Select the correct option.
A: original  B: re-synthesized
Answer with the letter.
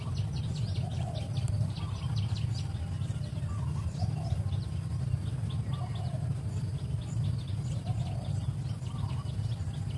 A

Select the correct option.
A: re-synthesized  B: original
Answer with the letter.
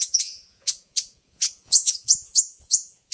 A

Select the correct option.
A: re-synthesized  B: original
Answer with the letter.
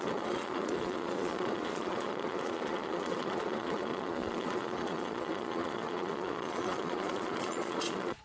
A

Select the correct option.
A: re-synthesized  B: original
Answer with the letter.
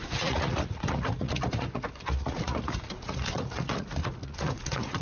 A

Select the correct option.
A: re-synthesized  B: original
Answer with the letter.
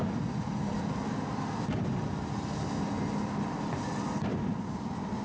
B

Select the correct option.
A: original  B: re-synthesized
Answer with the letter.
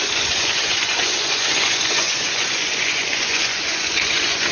B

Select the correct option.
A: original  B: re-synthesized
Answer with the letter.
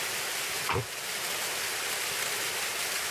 A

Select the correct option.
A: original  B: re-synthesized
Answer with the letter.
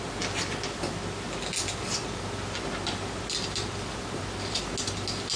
A